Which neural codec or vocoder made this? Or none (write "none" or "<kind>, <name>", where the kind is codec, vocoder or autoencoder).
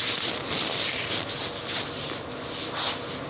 vocoder, BigVGAN v2